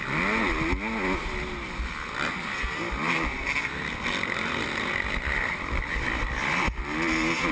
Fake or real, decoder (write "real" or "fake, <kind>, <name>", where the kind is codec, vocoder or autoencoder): real